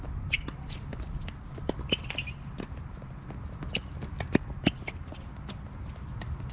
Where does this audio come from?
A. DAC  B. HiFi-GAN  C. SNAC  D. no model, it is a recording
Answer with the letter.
D